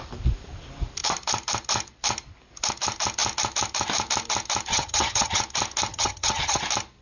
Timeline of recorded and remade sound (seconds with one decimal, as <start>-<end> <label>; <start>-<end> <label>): 0.0-4.7 recorded; 4.7-5.4 remade; 5.4-5.9 recorded; 5.9-6.6 remade; 6.6-7.0 recorded

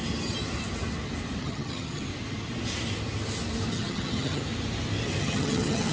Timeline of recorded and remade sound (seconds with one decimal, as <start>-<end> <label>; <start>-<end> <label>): 0.0-1.4 recorded; 1.4-2.1 remade; 2.1-3.7 recorded; 3.7-4.4 remade; 4.4-5.2 recorded; 5.2-5.9 remade